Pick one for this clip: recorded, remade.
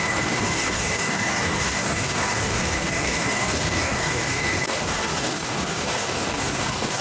remade